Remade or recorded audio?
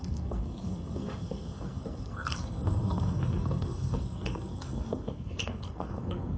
remade